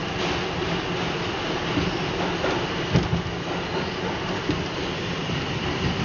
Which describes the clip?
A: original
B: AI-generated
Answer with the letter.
A